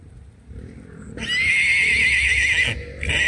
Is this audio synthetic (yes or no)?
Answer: no